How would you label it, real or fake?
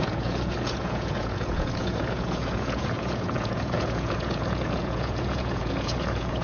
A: fake